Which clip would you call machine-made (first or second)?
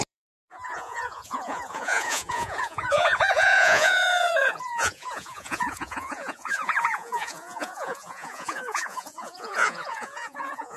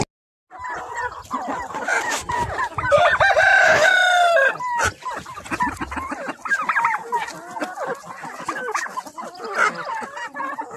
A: first